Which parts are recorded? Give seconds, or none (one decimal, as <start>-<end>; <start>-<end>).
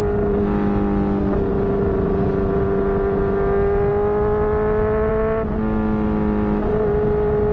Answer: 0.0-7.5